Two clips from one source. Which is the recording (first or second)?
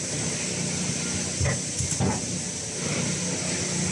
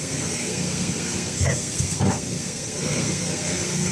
first